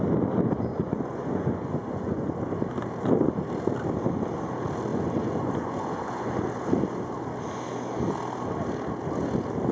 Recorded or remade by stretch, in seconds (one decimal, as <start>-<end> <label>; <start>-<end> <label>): 0.0-0.7 recorded; 0.7-2.3 remade; 2.3-4.9 recorded; 4.9-6.3 remade; 6.3-9.7 recorded